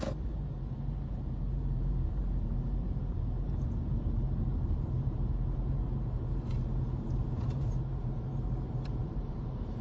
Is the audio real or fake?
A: fake